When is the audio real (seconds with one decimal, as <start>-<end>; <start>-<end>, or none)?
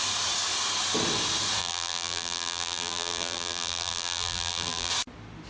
0.0-1.6; 4.9-5.5